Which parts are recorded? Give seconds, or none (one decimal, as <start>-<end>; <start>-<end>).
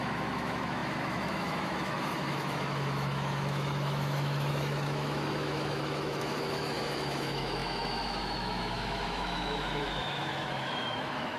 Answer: none